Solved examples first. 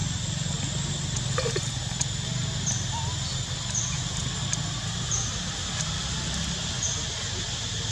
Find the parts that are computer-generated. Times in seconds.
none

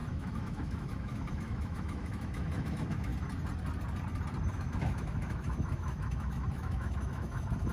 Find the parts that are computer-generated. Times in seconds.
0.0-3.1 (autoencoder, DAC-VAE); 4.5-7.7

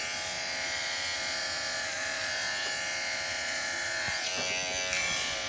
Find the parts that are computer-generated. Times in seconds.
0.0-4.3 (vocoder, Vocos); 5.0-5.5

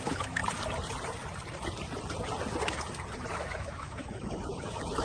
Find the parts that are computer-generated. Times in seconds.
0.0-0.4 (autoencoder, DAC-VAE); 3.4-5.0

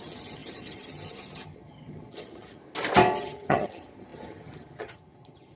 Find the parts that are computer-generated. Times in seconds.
0.0-2.6 (vocoder, HiFi-GAN); 3.2-5.6

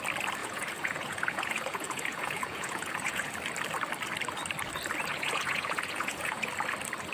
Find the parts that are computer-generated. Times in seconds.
0.4-3.3 (vocoder, Vocos); 5.1-6.5

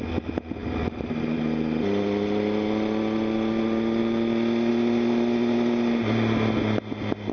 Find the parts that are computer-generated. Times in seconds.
0.6-1.4 (vocoder, BigVGAN v2)

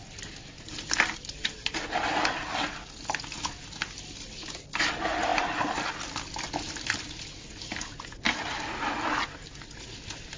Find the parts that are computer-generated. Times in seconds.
none